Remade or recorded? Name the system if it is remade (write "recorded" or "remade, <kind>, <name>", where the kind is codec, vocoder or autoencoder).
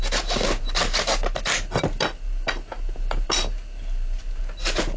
recorded